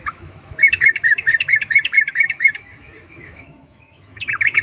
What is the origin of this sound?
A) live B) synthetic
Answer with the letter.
B